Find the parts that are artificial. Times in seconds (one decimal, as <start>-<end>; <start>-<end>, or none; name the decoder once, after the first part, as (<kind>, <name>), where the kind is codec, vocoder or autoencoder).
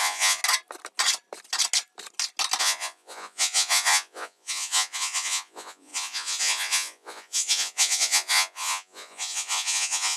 0.0-0.4 (vocoder, Vocos); 2.6-10.2